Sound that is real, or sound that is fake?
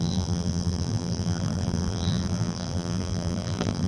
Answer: fake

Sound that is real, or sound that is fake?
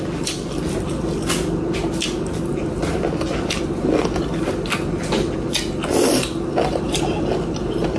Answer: real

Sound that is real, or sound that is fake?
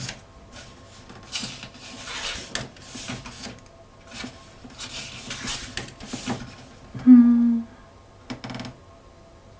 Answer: real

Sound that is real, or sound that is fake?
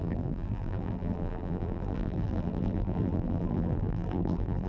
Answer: fake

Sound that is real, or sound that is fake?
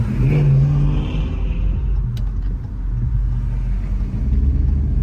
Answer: real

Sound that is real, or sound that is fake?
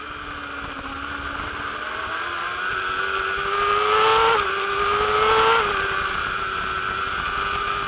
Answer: real